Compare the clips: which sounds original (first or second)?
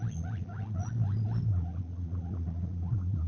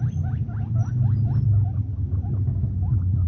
second